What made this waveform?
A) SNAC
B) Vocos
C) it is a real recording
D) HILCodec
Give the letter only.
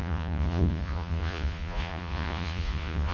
B